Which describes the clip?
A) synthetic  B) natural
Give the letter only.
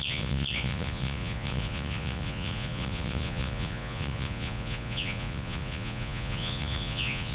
A